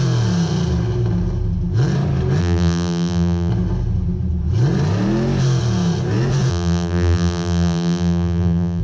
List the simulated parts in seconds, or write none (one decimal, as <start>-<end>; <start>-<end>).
2.4-3.5; 6.5-8.8